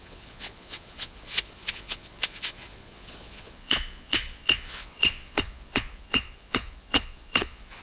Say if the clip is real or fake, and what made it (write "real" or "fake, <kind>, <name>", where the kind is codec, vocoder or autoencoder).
fake, vocoder, Vocos